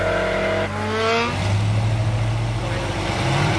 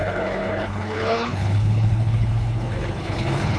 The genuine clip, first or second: first